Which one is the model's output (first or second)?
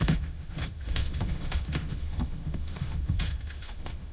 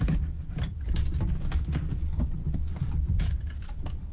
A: first